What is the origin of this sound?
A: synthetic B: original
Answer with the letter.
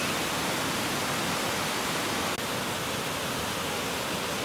B